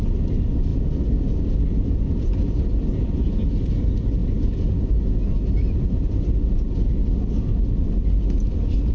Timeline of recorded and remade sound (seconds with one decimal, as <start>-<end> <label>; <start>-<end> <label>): 0.0-8.9 recorded